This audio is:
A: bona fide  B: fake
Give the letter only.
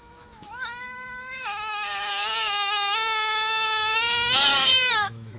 B